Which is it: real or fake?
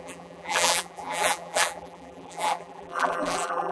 fake